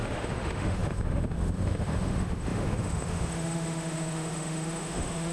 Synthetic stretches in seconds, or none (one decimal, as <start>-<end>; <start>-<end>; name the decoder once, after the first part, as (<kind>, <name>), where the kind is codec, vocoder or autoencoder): 0.0-5.3 (autoencoder, DAC-VAE)